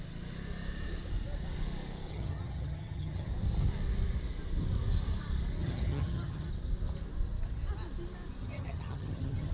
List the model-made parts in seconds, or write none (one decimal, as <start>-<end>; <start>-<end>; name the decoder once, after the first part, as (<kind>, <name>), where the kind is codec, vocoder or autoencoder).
2.1-3.3 (vocoder, HiFi-GAN); 5.6-6.5; 8.4-9.5